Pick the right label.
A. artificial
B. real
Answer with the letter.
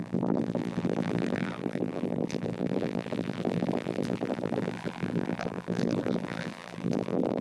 A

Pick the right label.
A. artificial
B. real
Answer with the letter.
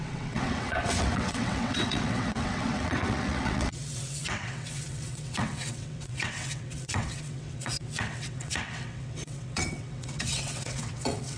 A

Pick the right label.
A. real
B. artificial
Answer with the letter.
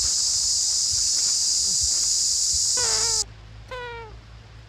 A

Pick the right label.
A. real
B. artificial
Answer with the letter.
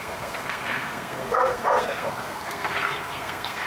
B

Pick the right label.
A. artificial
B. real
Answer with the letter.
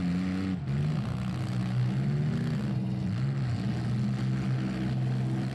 B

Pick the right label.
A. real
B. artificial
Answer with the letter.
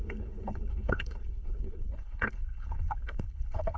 B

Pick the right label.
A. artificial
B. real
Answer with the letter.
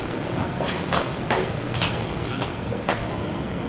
A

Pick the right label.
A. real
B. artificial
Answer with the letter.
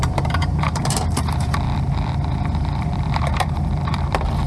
B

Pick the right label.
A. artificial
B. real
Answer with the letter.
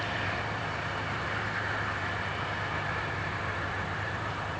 A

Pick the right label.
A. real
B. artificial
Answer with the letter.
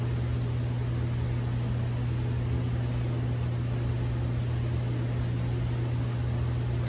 A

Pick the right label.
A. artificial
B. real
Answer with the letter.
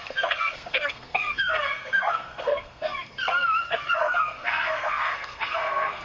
A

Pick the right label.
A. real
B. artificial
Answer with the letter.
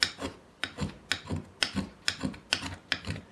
A